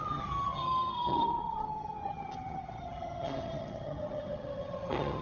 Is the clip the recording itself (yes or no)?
no